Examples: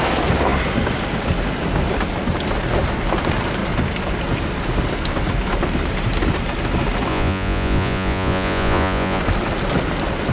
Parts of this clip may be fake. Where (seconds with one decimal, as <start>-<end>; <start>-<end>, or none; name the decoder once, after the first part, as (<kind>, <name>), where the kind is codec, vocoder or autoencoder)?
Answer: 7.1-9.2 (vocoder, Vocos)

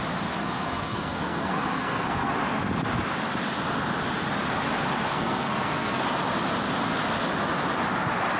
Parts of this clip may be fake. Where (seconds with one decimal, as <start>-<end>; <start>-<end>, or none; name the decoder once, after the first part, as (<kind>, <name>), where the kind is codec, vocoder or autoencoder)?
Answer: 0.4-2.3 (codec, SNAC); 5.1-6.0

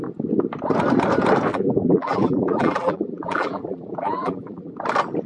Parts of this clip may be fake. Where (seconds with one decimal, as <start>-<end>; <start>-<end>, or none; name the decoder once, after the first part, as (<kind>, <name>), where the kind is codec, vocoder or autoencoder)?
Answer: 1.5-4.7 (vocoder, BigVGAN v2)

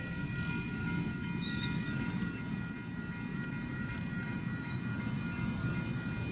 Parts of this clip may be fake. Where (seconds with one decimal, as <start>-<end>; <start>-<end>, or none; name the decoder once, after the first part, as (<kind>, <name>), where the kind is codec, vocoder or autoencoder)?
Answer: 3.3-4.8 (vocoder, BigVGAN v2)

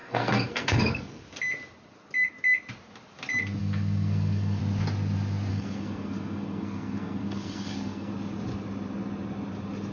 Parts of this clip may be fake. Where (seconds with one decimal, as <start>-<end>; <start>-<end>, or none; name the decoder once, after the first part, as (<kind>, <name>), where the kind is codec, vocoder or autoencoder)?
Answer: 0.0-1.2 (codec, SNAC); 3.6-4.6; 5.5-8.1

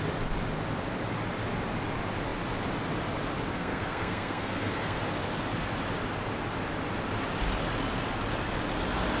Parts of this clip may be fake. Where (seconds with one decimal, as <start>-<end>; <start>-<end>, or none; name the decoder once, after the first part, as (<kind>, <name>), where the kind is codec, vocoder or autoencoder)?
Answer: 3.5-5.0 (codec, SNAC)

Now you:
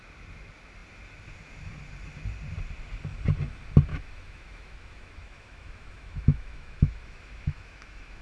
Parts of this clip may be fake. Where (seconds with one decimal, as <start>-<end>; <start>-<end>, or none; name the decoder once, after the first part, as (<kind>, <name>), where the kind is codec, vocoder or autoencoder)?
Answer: 3.9-8.2 (autoencoder, DAC-VAE)

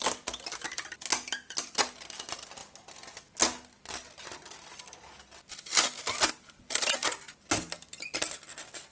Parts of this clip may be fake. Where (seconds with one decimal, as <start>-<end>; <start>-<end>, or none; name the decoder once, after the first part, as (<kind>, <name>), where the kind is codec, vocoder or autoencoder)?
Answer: none